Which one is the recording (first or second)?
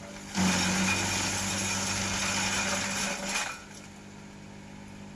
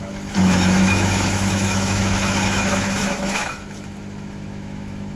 first